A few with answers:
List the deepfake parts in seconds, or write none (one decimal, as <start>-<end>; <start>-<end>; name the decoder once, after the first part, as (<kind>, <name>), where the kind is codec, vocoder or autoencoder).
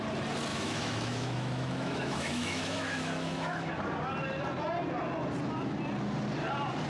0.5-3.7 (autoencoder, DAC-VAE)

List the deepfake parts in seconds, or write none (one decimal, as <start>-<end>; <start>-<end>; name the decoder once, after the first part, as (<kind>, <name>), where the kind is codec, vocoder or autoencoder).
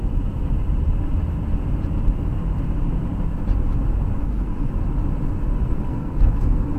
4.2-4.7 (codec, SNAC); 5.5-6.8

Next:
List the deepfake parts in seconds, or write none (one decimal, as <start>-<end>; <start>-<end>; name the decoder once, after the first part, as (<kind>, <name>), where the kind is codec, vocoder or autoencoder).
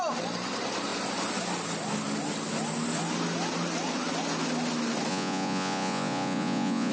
5.1-6.9 (vocoder, Vocos)